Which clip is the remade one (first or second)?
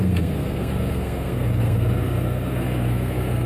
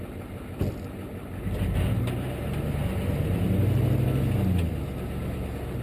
first